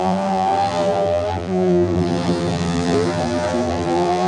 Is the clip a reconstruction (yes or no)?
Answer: yes